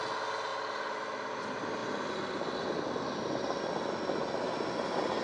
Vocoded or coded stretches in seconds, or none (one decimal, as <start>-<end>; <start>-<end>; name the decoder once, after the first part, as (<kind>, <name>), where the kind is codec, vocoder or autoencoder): none